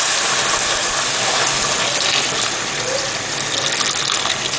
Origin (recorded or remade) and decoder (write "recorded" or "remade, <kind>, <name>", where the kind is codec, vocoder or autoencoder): recorded